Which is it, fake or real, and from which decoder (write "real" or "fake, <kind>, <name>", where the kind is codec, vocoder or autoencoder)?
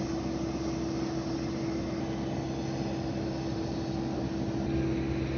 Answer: real